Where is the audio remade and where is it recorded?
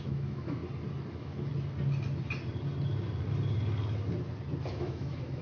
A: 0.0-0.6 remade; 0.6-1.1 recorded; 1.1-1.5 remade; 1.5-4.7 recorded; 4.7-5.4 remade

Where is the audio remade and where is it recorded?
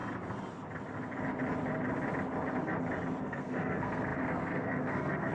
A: 0.0-3.2 recorded; 3.2-5.3 remade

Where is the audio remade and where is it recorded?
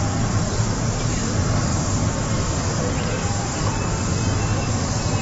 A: 0.0-5.2 recorded